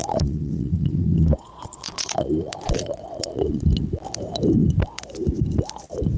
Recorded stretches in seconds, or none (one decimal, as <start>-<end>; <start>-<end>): 3.7-6.2